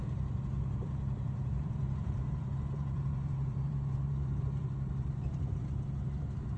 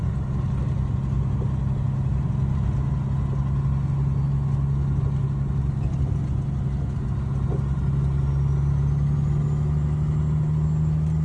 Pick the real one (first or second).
second